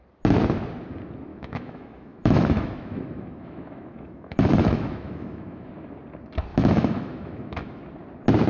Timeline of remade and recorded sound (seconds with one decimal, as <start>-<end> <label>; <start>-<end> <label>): 0.0-1.3 recorded; 1.3-5.7 remade; 5.7-6.5 recorded; 6.5-7.8 remade; 7.8-8.5 recorded